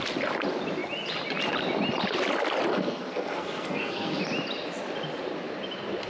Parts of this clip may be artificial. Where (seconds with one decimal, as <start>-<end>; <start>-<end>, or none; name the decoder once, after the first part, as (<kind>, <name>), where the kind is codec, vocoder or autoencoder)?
2.7-4.2 (codec, SNAC)